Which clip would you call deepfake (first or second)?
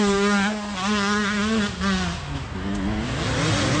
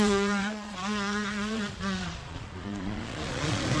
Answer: second